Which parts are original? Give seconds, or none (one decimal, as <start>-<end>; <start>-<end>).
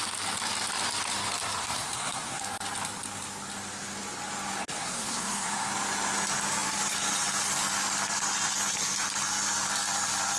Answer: 0.0-1.6; 2.4-4.6; 5.7-10.4